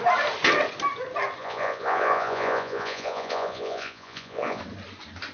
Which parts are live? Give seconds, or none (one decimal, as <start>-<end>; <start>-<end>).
0.0-1.4; 4.6-5.3